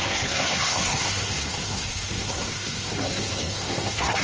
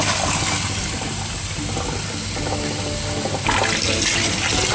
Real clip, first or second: second